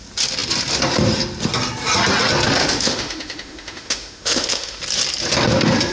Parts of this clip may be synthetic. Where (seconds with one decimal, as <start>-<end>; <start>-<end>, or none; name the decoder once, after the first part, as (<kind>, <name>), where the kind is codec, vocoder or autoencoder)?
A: 2.6-4.8 (autoencoder, DAC-VAE)